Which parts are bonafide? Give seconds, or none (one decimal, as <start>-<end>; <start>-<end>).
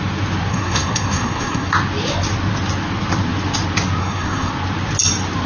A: 0.0-0.5; 1.7-4.0; 4.5-5.5